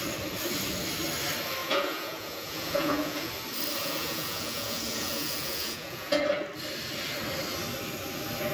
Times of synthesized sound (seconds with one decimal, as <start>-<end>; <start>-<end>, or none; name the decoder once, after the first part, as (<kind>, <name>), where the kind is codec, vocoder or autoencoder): 1.6-3.3 (vocoder, Vocos); 3.8-6.2